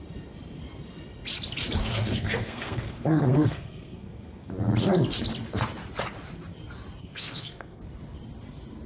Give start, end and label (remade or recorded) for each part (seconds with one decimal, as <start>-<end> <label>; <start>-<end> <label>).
0.0-1.8 recorded; 1.8-4.5 remade; 4.5-7.0 recorded; 7.0-7.8 remade; 7.8-8.9 recorded